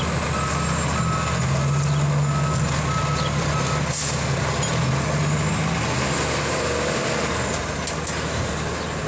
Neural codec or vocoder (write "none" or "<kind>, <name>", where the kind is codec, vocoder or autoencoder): none